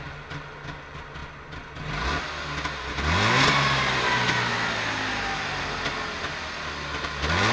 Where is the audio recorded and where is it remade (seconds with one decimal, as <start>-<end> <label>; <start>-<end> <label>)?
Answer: 0.0-7.5 recorded